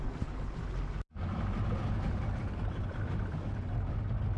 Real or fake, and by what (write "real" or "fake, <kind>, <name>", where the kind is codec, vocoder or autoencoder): real